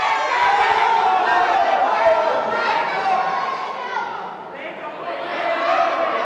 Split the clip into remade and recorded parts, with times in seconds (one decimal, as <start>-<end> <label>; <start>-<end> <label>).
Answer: 0.0-0.7 recorded; 0.7-3.5 remade; 3.5-5.3 recorded; 5.3-6.2 remade